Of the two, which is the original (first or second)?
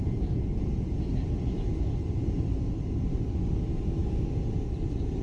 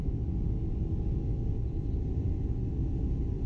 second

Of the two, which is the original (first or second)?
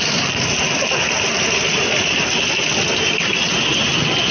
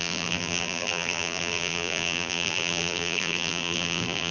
first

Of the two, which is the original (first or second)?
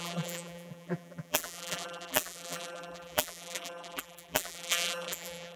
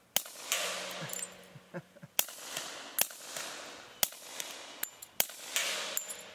second